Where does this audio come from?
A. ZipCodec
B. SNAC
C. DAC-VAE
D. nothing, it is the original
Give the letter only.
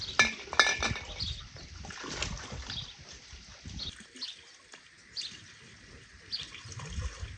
D